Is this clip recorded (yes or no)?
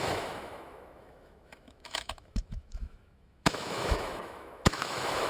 no